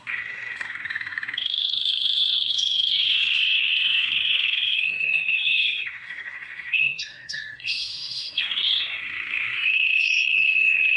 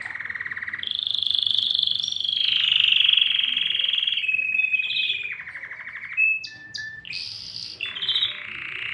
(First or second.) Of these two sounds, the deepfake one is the first